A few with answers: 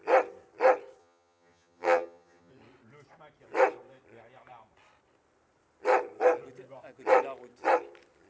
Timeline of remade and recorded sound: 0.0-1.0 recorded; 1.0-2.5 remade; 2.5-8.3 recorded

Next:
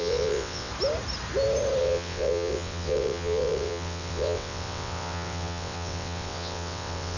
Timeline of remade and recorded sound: 0.0-0.7 remade; 0.7-1.8 recorded; 1.8-7.2 remade

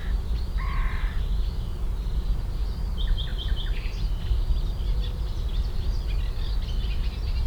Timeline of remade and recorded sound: 0.0-0.8 recorded; 0.8-2.2 remade; 2.2-3.3 recorded; 3.3-6.2 remade; 6.2-7.5 recorded

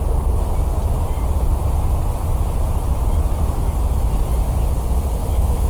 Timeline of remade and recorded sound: 0.0-5.2 recorded; 5.2-5.7 remade

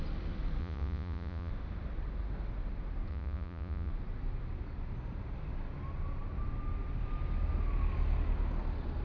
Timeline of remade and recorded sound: 0.0-0.6 recorded; 0.6-1.5 remade; 1.5-3.1 recorded; 3.1-3.9 remade; 3.9-9.0 recorded

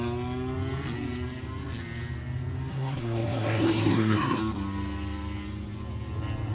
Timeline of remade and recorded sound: 0.0-2.7 recorded; 2.7-4.4 remade; 4.4-6.5 recorded

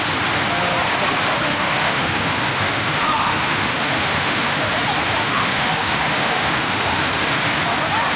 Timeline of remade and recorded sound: 0.0-1.3 recorded; 1.3-4.7 remade; 4.7-5.2 recorded; 5.2-7.1 remade; 7.1-8.2 recorded

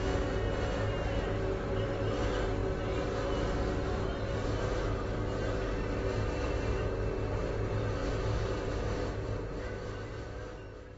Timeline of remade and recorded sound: 0.0-11.0 recorded